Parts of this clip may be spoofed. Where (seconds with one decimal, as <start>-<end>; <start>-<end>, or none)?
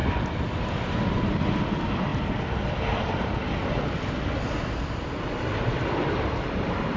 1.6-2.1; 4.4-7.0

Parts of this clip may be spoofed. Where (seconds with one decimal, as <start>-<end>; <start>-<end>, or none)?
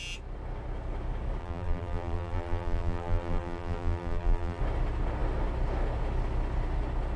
1.4-4.6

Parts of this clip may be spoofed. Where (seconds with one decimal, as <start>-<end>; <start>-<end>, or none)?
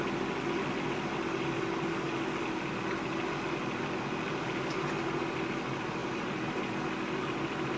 6.0-6.6